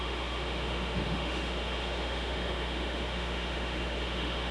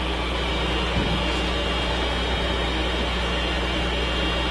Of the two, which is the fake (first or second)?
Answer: first